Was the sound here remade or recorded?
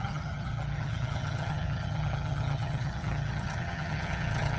remade